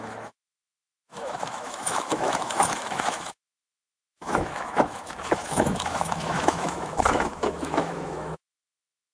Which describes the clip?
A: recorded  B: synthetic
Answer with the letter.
B